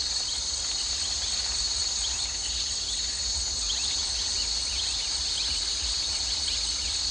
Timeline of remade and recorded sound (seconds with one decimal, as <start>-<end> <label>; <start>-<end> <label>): 0.0-7.1 recorded